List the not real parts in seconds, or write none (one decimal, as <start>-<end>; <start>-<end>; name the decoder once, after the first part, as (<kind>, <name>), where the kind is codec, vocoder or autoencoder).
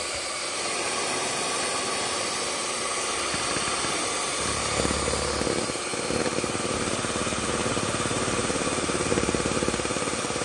none